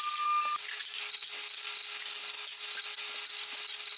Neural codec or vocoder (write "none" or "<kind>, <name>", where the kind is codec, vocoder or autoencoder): none